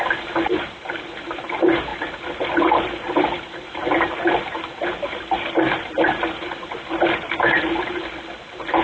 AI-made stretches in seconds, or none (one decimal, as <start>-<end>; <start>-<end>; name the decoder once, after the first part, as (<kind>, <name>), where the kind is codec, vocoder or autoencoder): 1.9-5.9 (vocoder, BigVGAN v2)